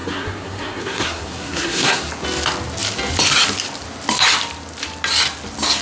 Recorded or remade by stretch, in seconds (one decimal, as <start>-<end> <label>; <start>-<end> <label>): 0.0-2.1 remade; 2.1-5.8 recorded